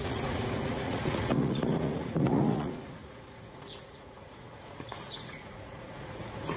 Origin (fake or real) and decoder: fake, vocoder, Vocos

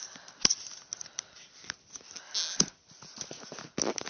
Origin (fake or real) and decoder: real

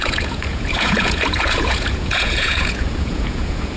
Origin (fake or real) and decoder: fake, vocoder, Vocos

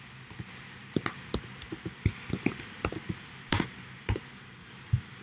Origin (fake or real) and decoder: real